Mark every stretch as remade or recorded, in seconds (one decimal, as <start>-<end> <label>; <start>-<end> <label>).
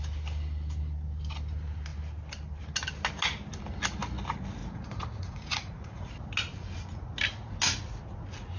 0.0-4.6 recorded; 4.6-6.1 remade; 6.1-8.6 recorded